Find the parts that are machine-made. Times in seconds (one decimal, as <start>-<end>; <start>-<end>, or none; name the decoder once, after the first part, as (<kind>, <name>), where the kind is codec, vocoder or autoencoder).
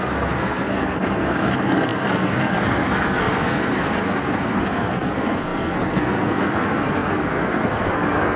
0.0-8.4 (codec, SNAC)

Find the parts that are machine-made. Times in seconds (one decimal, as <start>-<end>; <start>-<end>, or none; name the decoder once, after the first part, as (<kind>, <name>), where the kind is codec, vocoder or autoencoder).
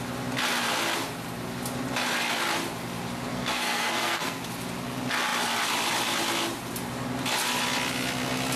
3.3-4.4 (codec, SNAC)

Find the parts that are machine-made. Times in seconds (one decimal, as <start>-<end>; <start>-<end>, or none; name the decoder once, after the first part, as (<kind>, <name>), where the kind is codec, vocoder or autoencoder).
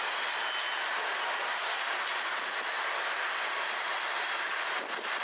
none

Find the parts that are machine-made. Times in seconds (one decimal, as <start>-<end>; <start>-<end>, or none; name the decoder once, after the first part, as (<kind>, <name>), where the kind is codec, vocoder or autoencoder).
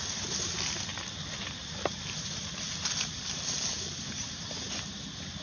none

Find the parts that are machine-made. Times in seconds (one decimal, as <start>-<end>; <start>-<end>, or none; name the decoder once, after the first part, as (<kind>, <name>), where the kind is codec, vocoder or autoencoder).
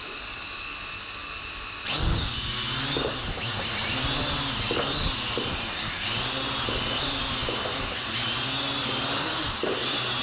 none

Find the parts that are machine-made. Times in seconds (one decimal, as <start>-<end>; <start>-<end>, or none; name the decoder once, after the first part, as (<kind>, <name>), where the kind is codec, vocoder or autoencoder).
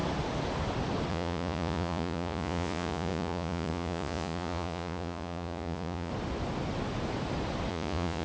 1.1-6.1 (vocoder, Vocos); 7.7-8.2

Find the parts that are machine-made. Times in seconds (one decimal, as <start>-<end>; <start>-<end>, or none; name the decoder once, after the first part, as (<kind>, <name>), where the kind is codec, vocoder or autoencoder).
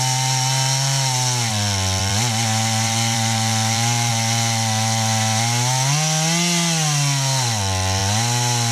1.5-4.1 (vocoder, BigVGAN v2)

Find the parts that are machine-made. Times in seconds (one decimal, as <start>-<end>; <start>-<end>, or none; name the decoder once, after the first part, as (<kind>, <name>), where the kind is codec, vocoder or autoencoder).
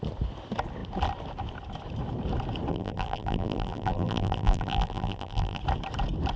2.7-5.6 (vocoder, BigVGAN v2)